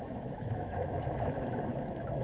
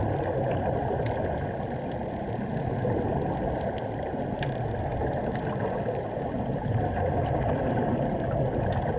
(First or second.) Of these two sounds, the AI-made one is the first